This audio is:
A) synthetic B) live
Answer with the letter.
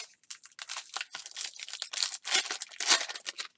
B